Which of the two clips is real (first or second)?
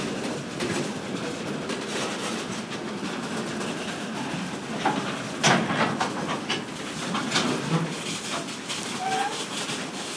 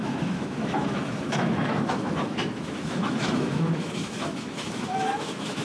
first